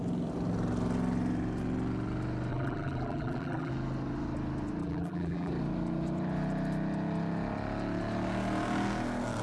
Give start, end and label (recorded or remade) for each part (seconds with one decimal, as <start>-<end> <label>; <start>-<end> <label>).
0.0-2.5 recorded; 2.5-3.7 remade; 3.7-4.8 recorded; 4.8-5.5 remade; 5.5-9.4 recorded